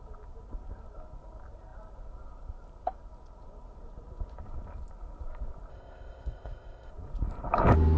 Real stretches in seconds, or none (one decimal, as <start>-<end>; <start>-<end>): 0.0-5.7; 6.9-8.0